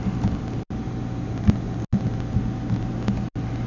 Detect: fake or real real